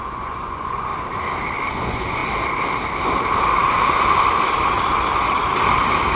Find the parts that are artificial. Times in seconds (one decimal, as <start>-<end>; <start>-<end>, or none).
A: 0.0-0.9; 1.7-2.2